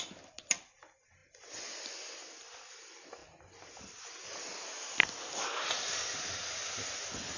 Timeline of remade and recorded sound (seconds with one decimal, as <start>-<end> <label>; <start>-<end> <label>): 0.0-7.4 recorded